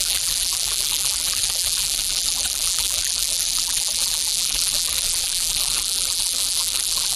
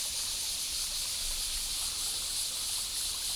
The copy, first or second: first